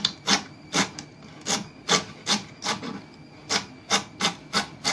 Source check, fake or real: real